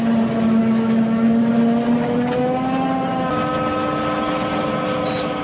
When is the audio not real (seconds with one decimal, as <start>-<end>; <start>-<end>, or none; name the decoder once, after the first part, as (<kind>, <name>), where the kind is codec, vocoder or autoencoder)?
0.6-1.5 (autoencoder, DAC-VAE)